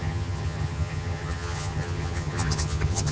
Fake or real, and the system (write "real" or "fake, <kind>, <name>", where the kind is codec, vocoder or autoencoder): fake, vocoder, HiFi-GAN